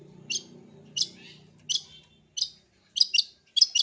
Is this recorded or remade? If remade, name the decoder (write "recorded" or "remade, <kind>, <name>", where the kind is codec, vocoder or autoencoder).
recorded